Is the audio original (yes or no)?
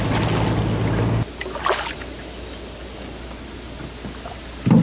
yes